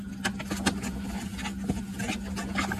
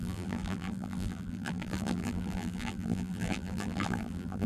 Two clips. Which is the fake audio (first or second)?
second